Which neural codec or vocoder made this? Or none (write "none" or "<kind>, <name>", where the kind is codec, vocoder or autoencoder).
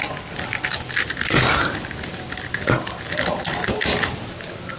none